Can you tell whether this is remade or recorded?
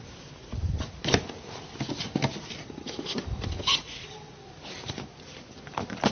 recorded